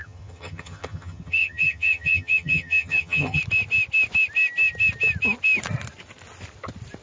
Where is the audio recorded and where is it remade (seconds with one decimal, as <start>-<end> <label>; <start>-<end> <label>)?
0.0-3.4 remade; 3.4-7.0 recorded